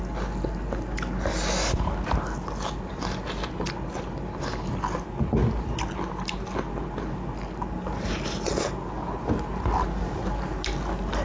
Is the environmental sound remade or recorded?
recorded